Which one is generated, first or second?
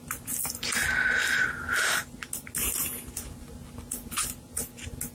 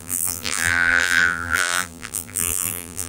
second